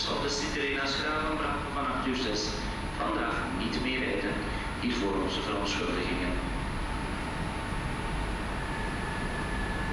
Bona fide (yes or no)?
yes